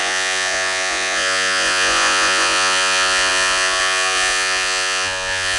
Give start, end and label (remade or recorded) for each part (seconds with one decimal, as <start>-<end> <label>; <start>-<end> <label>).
0.0-5.6 remade